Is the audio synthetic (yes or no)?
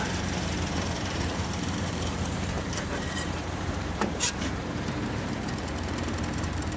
yes